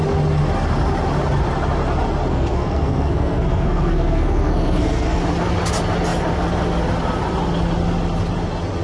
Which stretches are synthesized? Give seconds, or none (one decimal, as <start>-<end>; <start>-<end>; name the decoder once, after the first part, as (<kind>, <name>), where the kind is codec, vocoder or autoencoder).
2.3-5.2 (codec, SNAC)